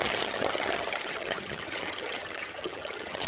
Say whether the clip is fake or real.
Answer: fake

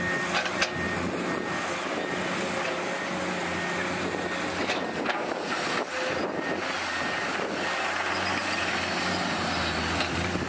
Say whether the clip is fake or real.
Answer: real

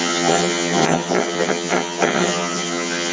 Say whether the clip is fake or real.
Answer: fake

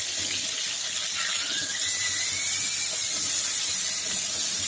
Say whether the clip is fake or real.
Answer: real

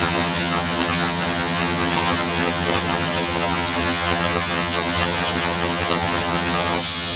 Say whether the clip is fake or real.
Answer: fake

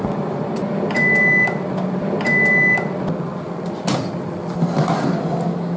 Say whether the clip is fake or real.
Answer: real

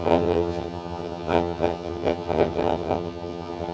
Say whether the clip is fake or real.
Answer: fake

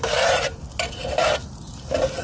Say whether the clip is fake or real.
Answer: real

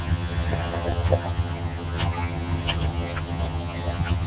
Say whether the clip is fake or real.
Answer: fake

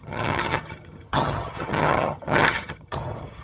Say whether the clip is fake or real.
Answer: fake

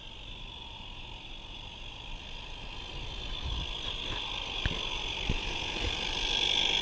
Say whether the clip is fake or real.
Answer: real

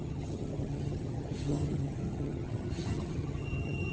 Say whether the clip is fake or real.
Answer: fake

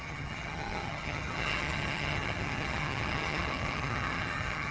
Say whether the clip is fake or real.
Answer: fake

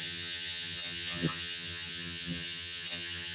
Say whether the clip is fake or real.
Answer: fake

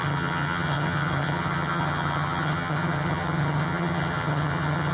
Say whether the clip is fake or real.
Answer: fake